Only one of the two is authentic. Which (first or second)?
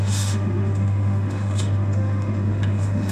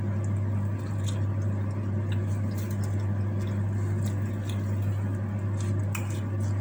second